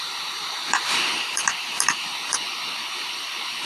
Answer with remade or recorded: remade